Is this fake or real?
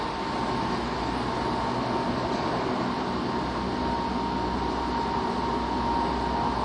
real